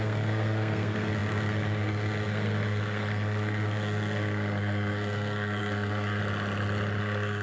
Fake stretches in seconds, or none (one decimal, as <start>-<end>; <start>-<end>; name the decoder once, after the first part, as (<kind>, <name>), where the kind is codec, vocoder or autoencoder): 0.0-6.2 (codec, SNAC); 7.0-7.4